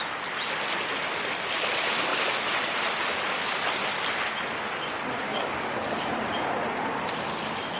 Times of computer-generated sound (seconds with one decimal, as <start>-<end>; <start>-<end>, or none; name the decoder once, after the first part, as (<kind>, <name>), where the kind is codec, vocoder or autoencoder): 5.3-6.2 (codec, DAC)